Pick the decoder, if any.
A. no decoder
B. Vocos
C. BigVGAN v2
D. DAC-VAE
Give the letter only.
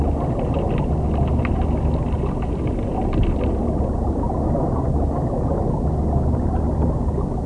A